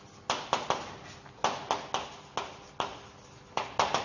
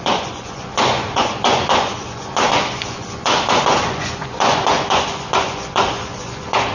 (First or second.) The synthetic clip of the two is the second